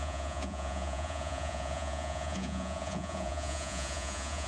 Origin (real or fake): fake